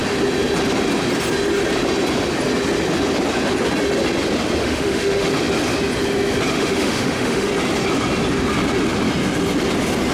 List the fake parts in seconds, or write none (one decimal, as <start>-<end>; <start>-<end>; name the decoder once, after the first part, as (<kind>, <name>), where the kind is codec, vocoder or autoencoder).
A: 4.6-5.3 (autoencoder, DAC-VAE); 6.5-7.5